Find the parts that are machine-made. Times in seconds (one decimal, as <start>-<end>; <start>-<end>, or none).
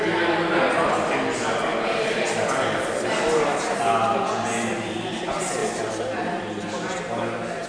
none